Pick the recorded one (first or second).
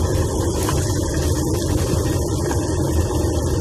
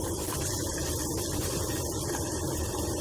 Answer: first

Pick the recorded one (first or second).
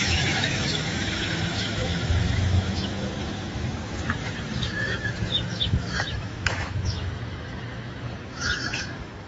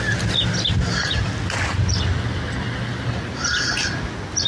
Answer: second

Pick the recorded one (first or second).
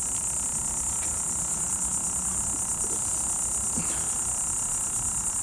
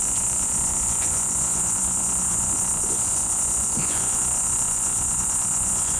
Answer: first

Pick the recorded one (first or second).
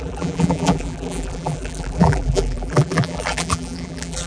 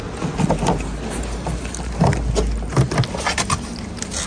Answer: second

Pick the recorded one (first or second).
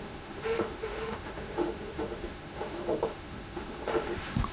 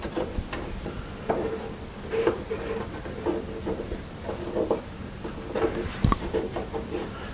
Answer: second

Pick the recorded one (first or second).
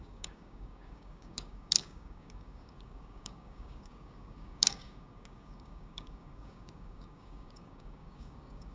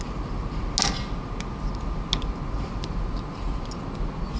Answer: second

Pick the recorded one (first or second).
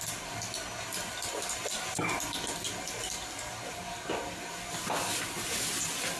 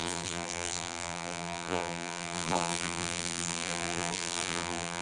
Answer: first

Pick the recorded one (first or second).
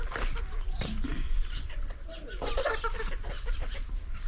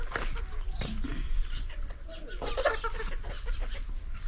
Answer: second